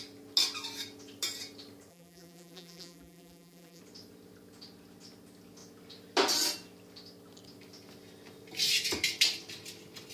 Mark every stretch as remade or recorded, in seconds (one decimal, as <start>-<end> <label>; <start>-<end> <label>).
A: 0.0-1.9 recorded; 1.9-3.8 remade; 3.8-10.1 recorded